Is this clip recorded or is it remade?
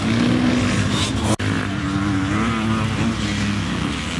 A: recorded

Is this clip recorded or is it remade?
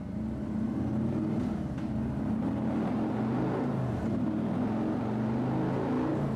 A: recorded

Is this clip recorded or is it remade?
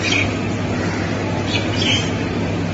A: recorded